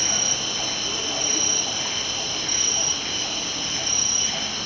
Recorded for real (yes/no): yes